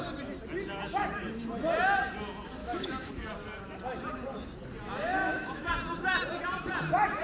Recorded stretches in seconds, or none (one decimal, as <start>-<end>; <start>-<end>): 0.0-2.6; 3.1-5.2; 5.7-7.2